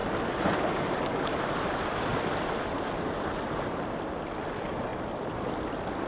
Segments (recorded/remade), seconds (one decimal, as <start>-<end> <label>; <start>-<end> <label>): 0.0-2.1 recorded; 2.1-2.9 remade; 2.9-4.9 recorded; 4.9-6.1 remade